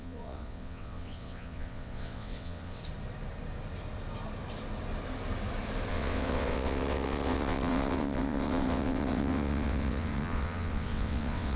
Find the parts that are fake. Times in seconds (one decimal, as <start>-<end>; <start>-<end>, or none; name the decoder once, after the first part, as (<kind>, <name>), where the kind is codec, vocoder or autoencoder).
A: 0.0-2.8 (vocoder, WaveNeXt); 5.9-11.6